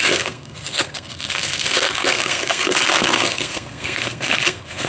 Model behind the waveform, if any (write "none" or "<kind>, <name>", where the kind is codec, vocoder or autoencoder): codec, SNAC